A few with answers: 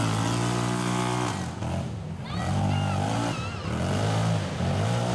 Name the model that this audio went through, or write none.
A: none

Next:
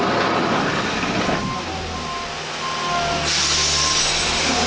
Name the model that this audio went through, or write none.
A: none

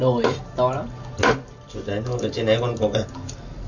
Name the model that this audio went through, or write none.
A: none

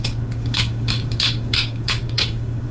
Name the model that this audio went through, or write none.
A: codec, DAC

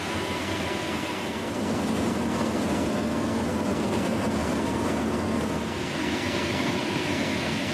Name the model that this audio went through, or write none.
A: codec, SNAC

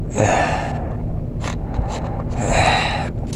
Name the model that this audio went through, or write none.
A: none